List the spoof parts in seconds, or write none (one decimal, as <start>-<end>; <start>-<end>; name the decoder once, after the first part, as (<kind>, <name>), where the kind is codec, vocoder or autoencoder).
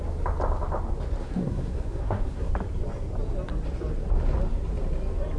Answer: 1.2-2.5 (codec, SNAC)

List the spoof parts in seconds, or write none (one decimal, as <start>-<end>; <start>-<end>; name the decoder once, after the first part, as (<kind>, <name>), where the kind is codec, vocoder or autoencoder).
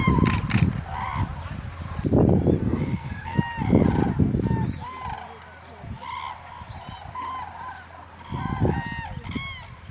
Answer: 2.6-3.4 (codec, SNAC)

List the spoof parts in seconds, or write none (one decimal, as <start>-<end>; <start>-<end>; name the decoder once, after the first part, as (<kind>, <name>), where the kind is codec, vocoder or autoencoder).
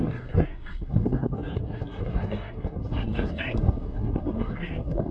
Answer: 0.0-5.1 (codec, SNAC)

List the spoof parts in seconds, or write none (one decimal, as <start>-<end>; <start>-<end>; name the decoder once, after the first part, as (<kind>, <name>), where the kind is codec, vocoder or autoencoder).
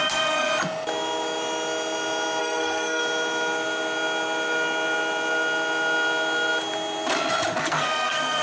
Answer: 0.0-0.5 (codec, SNAC); 2.4-3.0; 7.6-8.4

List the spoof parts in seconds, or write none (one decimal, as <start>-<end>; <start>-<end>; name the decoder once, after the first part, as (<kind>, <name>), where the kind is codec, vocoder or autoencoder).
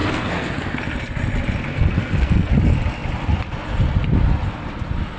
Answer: 0.0-0.8 (codec, SNAC); 1.7-2.5